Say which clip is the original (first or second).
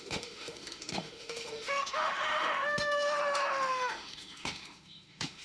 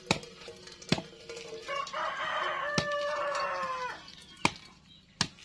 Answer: second